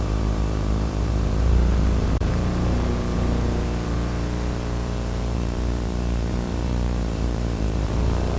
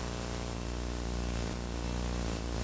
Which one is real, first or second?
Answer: second